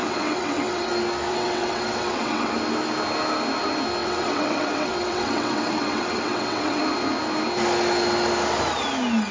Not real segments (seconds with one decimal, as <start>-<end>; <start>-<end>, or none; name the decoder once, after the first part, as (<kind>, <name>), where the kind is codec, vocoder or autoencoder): 0.0-0.9 (vocoder, WaveNeXt); 1.3-2.5; 4.0-6.8